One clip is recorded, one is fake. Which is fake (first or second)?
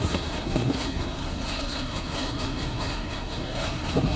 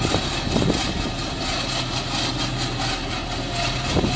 first